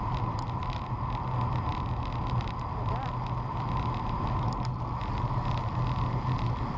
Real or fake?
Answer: real